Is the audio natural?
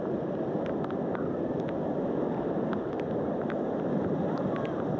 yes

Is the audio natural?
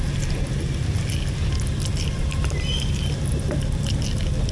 yes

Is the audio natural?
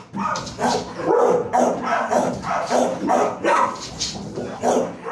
yes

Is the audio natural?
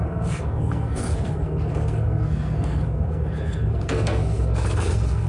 no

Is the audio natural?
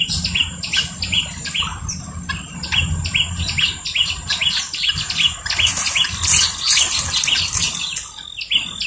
yes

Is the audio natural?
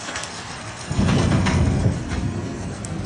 no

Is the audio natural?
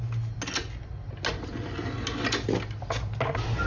yes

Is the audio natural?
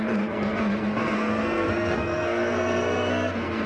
no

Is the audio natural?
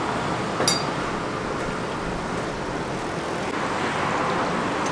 yes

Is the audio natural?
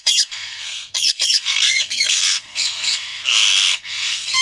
no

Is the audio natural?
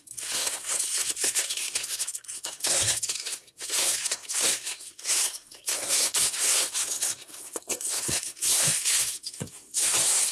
no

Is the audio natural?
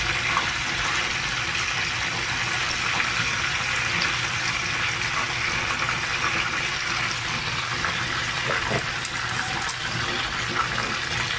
yes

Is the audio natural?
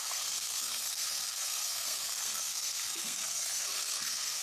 no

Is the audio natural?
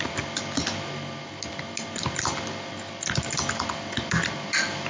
yes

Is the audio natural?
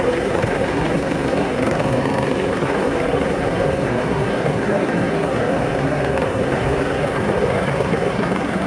no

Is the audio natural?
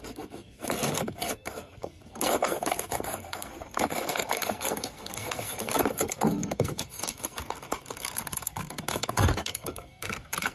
no